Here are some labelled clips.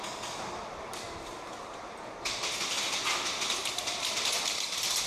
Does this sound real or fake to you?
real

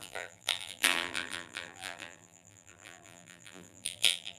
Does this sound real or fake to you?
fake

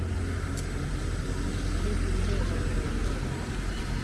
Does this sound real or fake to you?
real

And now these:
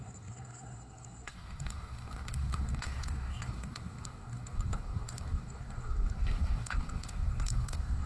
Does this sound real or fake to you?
fake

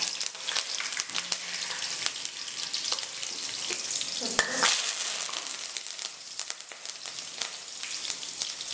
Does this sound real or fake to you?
real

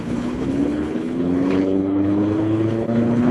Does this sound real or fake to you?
fake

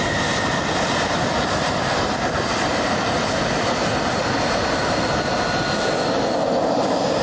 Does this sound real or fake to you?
real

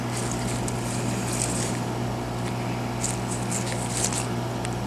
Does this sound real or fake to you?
real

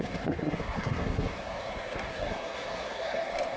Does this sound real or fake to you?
fake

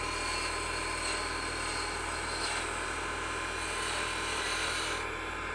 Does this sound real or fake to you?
real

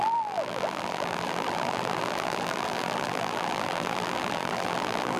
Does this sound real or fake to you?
fake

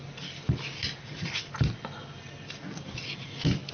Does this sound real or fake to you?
real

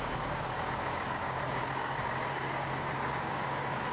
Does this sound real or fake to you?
fake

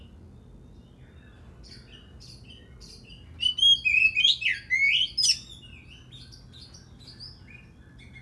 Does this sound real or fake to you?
real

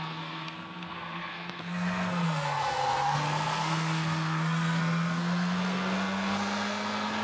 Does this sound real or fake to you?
fake